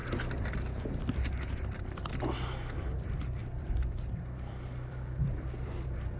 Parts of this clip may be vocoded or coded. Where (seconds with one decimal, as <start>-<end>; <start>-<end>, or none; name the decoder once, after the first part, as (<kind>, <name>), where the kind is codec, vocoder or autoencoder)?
1.8-6.2 (vocoder, BigVGAN v2)

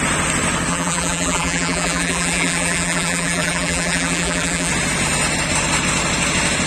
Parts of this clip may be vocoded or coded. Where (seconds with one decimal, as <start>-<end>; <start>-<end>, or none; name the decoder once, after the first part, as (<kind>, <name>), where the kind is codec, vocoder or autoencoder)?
0.7-4.7 (vocoder, BigVGAN v2)

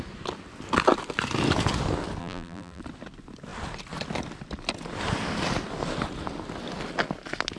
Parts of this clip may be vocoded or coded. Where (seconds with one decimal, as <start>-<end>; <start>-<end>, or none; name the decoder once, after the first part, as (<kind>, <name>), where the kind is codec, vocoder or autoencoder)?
2.2-2.8 (vocoder, BigVGAN v2)

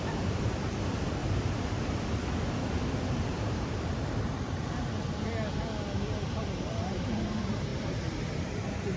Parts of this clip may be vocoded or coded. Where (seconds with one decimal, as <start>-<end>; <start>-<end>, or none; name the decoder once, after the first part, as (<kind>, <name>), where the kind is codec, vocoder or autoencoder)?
0.0-1.2 (vocoder, BigVGAN v2); 2.5-4.9; 6.8-9.0